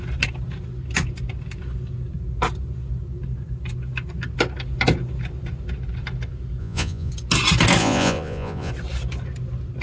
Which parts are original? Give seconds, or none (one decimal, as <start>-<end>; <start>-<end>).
0.0-6.6; 7.1-7.8; 8.7-9.8